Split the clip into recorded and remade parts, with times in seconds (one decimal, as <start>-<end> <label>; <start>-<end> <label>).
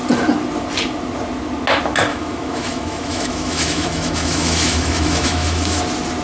0.0-2.1 recorded; 2.1-5.8 remade; 5.8-6.2 recorded